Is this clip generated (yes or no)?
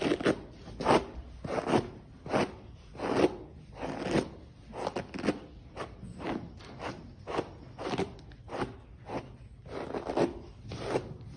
no